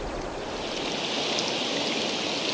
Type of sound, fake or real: real